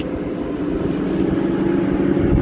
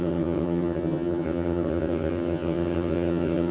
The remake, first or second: second